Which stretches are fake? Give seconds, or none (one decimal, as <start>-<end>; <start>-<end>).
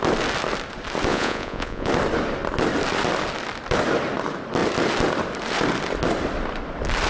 1.1-1.9